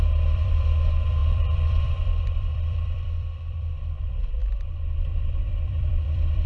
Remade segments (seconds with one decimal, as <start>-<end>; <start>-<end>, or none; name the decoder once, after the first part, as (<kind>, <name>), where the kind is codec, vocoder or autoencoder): 0.0-6.5 (vocoder, BigVGAN v2)

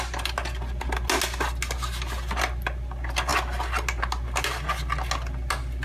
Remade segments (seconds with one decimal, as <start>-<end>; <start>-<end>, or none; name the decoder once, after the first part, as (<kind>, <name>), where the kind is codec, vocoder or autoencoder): none

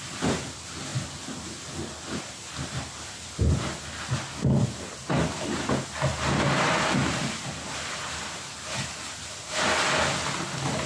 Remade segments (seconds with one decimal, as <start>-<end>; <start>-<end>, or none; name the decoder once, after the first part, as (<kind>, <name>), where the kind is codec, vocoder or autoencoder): 0.9-3.1 (vocoder, BigVGAN v2)